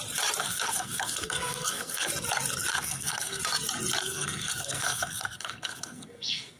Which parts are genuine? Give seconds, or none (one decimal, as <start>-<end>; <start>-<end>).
0.0-0.4; 2.1-2.7; 3.4-4.0